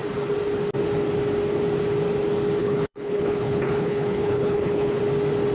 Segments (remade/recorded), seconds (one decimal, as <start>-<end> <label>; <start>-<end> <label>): 0.0-2.6 recorded; 2.6-5.0 remade; 5.0-5.5 recorded